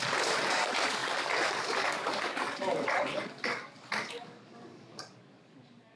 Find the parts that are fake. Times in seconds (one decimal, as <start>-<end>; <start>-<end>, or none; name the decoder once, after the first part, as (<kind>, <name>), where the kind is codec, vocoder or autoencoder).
0.0-6.0 (codec, DAC)